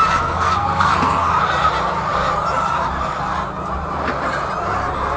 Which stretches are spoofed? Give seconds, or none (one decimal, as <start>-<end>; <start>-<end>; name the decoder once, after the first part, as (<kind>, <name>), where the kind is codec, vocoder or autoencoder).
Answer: 0.0-1.3 (codec, SNAC)